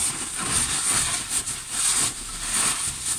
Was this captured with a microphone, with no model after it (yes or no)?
yes